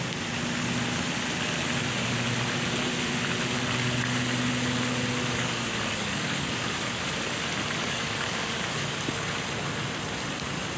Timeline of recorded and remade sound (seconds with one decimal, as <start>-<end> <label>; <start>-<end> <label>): 0.0-5.2 recorded; 5.2-7.0 remade; 7.0-7.8 recorded; 7.8-9.0 remade; 9.0-10.8 recorded